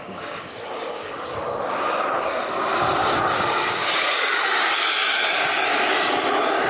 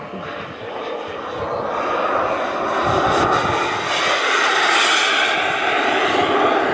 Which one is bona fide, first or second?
second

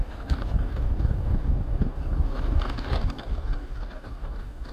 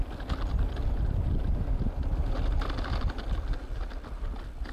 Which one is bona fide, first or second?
second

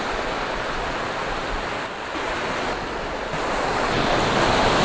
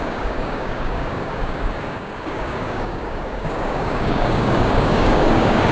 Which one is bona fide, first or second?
first